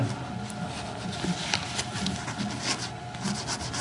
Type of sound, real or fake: real